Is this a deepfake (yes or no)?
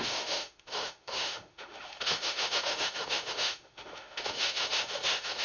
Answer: yes